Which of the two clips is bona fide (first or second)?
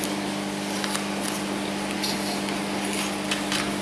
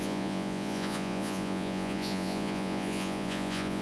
first